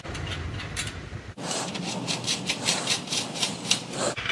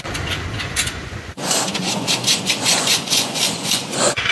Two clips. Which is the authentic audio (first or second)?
first